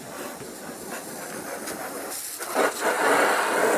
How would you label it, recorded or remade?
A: recorded